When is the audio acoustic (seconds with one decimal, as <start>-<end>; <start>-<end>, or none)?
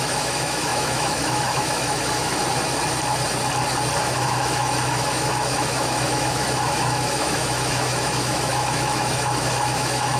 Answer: 2.4-4.0